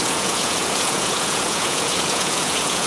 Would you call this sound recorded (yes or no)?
no